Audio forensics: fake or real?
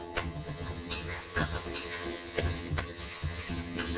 fake